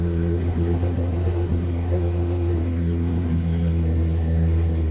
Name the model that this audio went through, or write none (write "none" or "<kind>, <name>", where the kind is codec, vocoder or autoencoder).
codec, SNAC